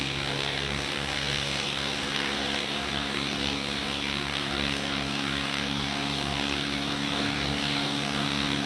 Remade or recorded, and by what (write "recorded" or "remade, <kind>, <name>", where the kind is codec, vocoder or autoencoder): remade, codec, DAC